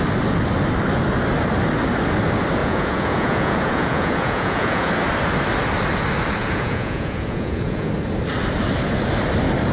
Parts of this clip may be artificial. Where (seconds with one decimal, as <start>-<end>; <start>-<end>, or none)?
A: 2.6-4.9; 6.4-7.9